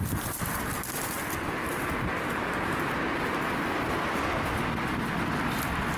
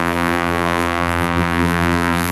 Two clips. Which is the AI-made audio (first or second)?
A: second